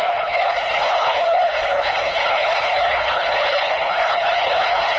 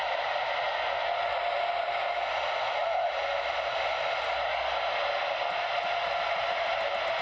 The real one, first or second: second